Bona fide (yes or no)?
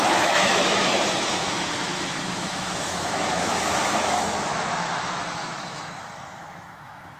no